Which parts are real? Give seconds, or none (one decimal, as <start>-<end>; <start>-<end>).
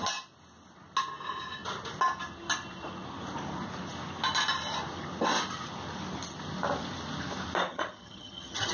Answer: 0.0-7.7